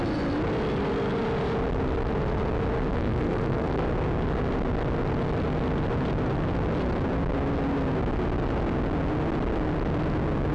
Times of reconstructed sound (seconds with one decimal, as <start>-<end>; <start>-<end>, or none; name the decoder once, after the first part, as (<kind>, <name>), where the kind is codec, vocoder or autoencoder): 2.9-3.8 (codec, SNAC)